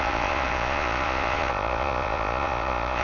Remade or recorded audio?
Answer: remade